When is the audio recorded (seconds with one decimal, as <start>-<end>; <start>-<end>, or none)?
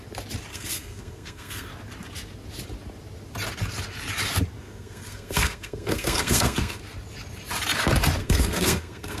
0.0-0.5; 1.7-4.6; 6.8-8.2